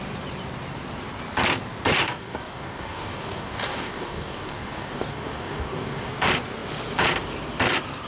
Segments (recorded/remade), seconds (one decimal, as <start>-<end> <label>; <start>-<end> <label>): 0.0-2.0 recorded; 2.0-6.1 remade; 6.1-8.1 recorded